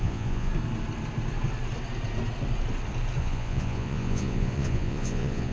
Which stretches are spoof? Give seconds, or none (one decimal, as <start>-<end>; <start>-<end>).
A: 0.0-0.5; 3.2-5.5